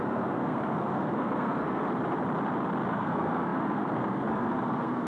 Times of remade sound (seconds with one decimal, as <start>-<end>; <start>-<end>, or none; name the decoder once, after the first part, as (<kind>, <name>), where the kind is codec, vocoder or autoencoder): 0.0-1.8 (codec, SNAC); 2.9-5.1